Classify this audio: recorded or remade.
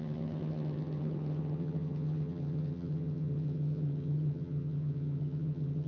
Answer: remade